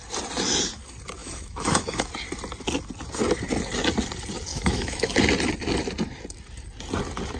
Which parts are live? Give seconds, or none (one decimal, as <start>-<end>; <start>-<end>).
0.0-1.2; 2.1-4.5; 5.2-7.4